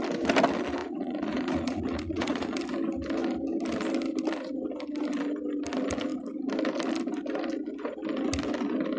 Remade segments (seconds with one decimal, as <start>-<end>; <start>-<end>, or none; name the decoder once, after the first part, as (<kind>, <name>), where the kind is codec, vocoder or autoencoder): 0.8-2.6 (vocoder, Vocos)